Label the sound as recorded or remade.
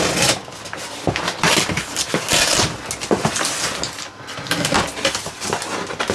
recorded